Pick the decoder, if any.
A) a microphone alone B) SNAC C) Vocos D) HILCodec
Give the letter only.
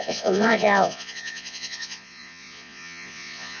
C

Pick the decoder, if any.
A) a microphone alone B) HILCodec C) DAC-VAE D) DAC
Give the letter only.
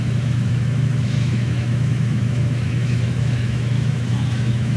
C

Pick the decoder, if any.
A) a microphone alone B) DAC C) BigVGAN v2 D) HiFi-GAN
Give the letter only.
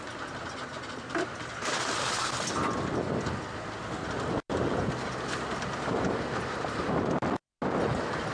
A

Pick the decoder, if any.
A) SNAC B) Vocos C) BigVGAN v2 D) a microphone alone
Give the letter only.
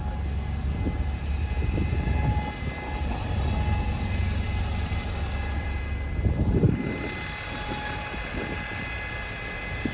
D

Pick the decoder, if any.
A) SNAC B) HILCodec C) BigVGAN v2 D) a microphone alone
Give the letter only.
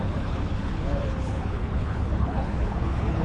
B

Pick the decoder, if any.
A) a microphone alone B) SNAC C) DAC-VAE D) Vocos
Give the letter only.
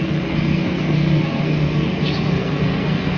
B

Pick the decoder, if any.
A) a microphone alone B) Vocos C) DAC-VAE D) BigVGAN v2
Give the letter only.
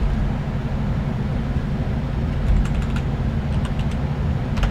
A